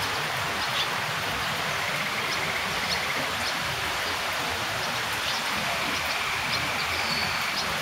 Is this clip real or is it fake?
real